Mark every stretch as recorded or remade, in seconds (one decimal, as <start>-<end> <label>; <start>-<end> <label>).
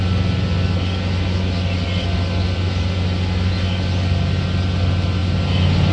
0.0-5.9 recorded